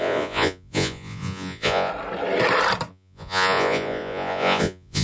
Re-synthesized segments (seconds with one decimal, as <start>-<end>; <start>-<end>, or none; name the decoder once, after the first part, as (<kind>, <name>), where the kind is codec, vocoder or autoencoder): 0.0-1.9 (vocoder, Vocos); 2.9-5.0